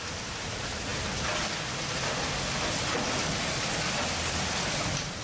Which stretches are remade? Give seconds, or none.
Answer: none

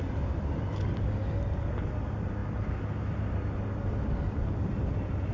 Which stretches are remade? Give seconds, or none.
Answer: none